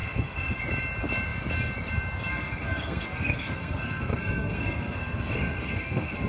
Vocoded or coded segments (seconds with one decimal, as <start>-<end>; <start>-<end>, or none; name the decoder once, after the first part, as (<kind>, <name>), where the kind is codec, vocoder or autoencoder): 0.0-0.6 (codec, SNAC); 2.3-6.3